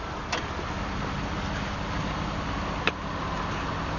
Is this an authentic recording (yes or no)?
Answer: yes